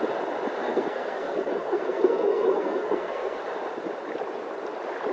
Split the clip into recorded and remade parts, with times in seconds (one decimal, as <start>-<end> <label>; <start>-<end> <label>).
0.0-0.6 recorded; 0.6-3.4 remade; 3.4-5.1 recorded